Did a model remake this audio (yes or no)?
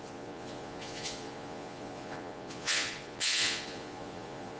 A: yes